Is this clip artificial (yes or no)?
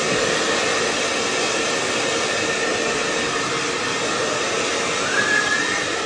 no